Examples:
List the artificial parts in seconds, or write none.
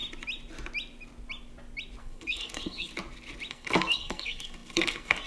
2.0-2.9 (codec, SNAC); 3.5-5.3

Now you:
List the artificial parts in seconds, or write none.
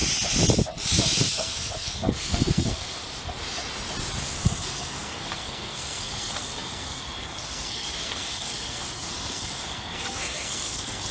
1.0-3.0 (codec, SNAC); 4.2-11.1